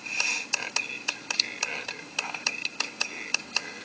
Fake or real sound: real